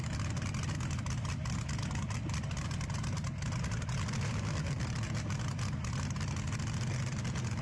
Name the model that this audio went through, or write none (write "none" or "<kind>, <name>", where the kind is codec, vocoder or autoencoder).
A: none